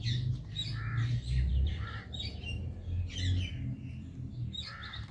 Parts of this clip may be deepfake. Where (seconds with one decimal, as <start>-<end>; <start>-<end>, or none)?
1.5-2.6